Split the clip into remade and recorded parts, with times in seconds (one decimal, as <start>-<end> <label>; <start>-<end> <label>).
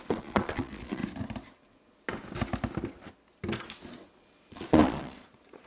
0.0-1.0 remade; 1.0-4.4 recorded; 4.4-5.7 remade